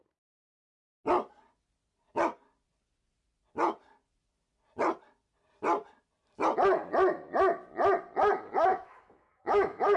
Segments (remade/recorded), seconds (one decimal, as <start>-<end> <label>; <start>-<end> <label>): 0.0-8.7 recorded; 8.7-10.0 remade